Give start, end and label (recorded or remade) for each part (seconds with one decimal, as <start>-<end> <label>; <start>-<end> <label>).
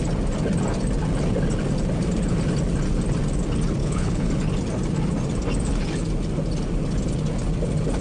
0.0-3.8 recorded; 3.8-4.3 remade; 4.3-8.0 recorded